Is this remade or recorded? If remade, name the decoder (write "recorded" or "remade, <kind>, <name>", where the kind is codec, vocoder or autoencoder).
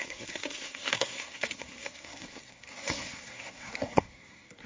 remade, codec, SNAC